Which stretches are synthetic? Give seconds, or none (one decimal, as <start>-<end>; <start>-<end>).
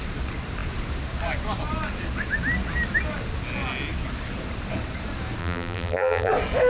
5.4-6.3